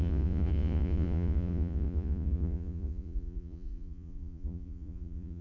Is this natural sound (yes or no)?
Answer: no